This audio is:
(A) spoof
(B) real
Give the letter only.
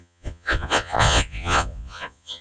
A